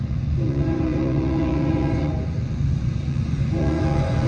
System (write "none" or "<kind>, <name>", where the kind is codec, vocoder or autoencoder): vocoder, Vocos